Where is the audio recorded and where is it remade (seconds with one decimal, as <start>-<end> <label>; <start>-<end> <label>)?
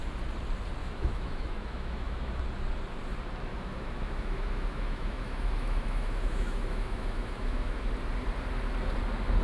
0.0-0.8 recorded; 0.8-2.4 remade; 2.4-3.5 recorded; 3.5-7.9 remade; 7.9-9.4 recorded